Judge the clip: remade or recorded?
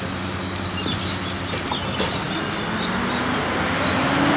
recorded